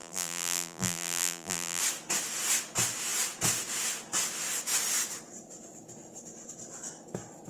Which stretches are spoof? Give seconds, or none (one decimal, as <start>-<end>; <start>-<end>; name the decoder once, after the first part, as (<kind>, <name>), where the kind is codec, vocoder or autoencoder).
0.0-1.8 (vocoder, BigVGAN v2)